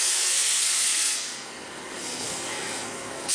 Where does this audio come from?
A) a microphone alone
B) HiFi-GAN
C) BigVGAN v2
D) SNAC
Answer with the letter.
D